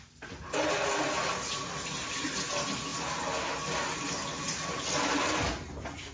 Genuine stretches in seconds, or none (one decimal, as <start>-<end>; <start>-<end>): 0.0-6.1